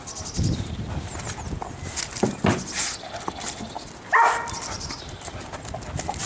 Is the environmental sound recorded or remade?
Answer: recorded